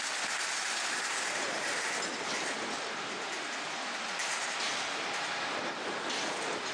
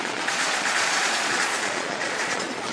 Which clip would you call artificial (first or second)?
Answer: second